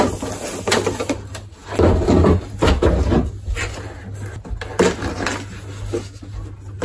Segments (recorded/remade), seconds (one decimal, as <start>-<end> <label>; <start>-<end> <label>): 0.0-6.8 recorded